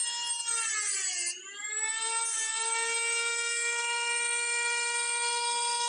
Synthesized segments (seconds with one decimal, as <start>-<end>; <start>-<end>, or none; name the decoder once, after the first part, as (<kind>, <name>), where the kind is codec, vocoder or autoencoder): 3.3-5.9 (codec, SNAC)